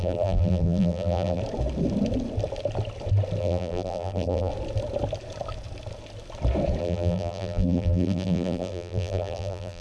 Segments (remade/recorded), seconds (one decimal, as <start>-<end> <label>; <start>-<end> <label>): 0.0-1.4 remade; 1.4-3.4 recorded; 3.4-4.5 remade; 4.5-6.8 recorded; 6.8-9.8 remade